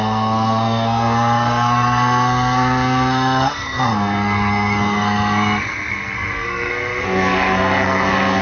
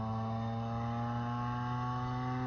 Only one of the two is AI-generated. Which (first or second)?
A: first